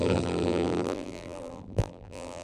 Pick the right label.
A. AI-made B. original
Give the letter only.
A